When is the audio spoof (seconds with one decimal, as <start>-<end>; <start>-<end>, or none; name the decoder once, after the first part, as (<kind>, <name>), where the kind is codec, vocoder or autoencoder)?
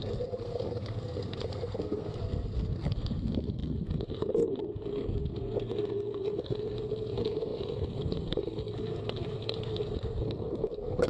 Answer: 0.0-11.1 (codec, SNAC)